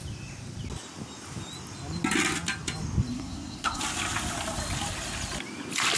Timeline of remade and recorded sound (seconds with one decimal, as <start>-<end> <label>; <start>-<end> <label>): 0.0-3.1 recorded; 3.1-3.8 remade; 3.8-6.0 recorded